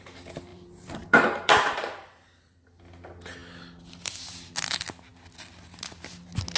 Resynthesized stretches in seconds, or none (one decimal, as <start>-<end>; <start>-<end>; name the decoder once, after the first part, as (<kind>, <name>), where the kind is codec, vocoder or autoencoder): 0.5-2.8 (vocoder, BigVGAN v2)